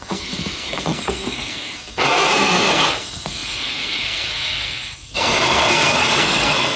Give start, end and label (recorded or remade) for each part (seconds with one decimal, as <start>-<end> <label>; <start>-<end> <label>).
0.0-6.8 remade